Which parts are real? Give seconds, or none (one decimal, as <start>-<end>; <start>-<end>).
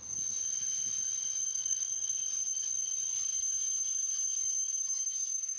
0.0-1.5; 2.1-5.6